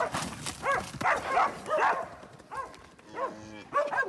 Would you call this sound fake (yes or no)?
no